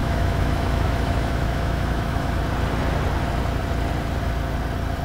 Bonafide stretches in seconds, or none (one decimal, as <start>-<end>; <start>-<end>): 2.4-5.0